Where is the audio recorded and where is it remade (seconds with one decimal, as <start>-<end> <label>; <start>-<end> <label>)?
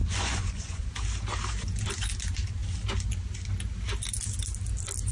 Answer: 0.0-0.9 remade; 0.9-5.1 recorded